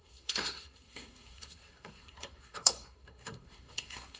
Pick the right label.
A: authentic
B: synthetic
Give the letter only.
B